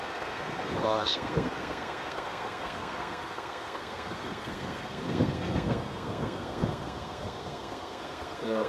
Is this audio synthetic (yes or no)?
yes